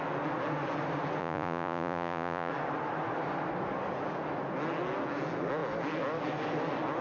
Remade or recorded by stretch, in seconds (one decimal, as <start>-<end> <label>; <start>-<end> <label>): 0.0-1.2 recorded; 1.2-2.5 remade; 2.5-7.0 recorded